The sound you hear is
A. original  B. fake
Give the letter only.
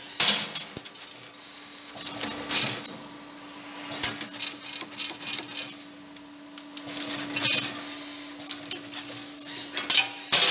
A